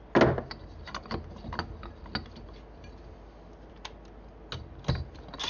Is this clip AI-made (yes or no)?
no